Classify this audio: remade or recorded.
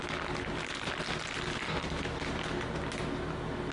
recorded